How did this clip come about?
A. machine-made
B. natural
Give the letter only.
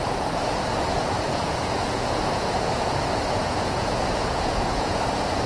A